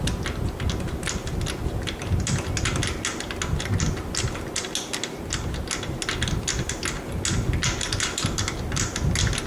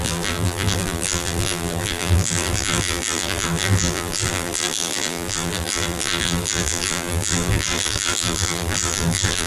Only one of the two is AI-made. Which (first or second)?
second